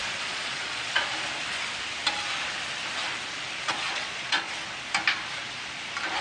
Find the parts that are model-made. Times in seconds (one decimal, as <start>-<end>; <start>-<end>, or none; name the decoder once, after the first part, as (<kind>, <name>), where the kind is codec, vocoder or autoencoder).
0.0-1.1 (vocoder, Vocos); 3.6-4.5